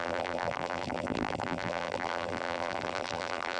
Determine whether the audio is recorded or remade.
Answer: remade